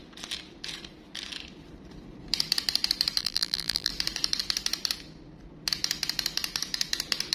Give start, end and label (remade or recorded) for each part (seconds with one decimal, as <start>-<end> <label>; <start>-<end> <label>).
0.0-3.2 recorded; 3.2-3.9 remade; 3.9-7.3 recorded